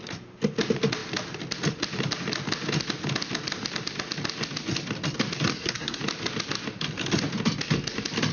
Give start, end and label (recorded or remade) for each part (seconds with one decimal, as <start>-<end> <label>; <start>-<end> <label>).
0.0-5.5 recorded; 5.5-6.0 remade; 6.0-8.3 recorded